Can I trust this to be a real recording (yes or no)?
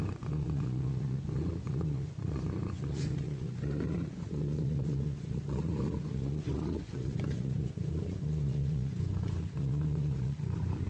no